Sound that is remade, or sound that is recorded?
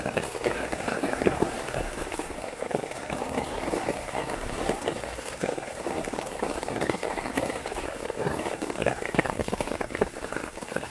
remade